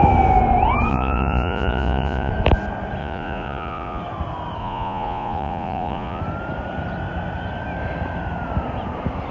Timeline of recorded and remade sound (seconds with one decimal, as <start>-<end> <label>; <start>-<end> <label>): 0.0-0.9 recorded; 0.9-2.3 remade; 2.3-3.0 recorded; 3.0-4.0 remade; 4.0-4.6 recorded; 4.6-6.2 remade; 6.2-9.3 recorded

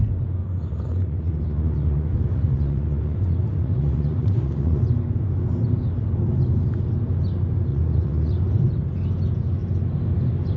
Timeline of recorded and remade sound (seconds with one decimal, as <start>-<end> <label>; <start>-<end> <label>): 0.0-0.4 recorded; 0.4-4.8 remade; 4.8-7.7 recorded; 7.7-8.4 remade; 8.4-10.6 recorded

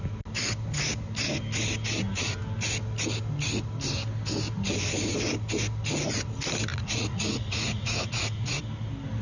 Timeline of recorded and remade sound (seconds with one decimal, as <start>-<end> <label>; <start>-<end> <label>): 0.0-6.7 recorded; 6.7-8.6 remade; 8.6-9.2 recorded

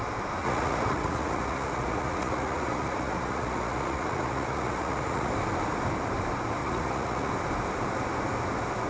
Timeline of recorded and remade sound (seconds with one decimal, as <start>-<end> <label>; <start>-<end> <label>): 0.0-0.4 recorded; 0.4-5.3 remade; 5.3-6.6 recorded; 6.6-7.3 remade; 7.3-8.9 recorded